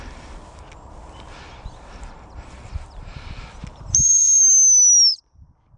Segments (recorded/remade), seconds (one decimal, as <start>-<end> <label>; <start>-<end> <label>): 0.0-5.1 recorded; 5.1-5.8 remade